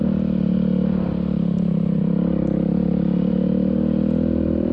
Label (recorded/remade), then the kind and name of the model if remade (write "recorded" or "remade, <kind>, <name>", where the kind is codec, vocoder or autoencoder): recorded